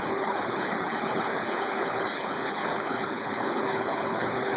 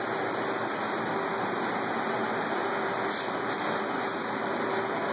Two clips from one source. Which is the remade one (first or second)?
first